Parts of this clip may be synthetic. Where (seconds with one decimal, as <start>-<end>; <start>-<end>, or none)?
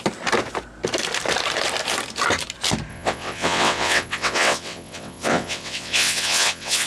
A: 2.9-6.9